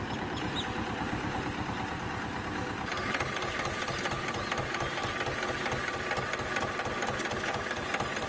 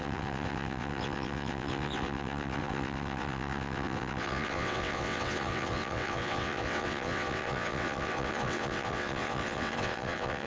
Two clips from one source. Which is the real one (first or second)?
first